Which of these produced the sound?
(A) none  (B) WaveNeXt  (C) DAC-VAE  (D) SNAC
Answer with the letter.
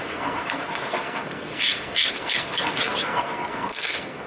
D